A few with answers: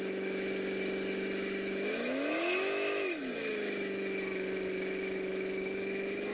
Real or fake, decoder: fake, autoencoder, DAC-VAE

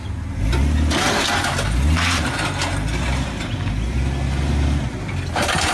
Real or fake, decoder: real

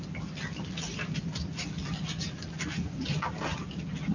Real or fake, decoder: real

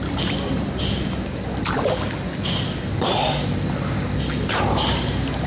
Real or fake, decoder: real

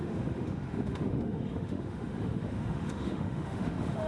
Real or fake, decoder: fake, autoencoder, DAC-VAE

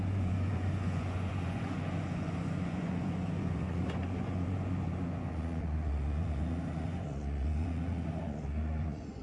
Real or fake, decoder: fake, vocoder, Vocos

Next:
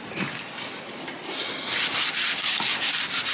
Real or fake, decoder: fake, vocoder, BigVGAN v2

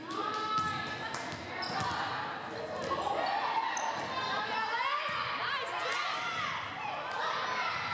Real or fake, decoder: real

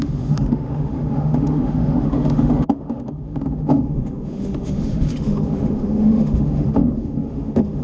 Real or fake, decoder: fake, autoencoder, DAC-VAE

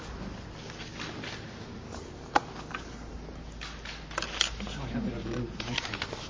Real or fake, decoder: real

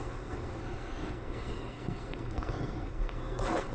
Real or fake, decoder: fake, codec, SNAC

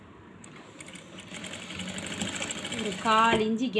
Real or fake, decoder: real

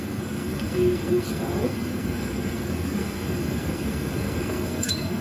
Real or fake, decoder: fake, codec, SNAC